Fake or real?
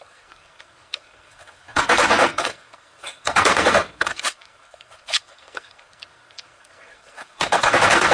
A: fake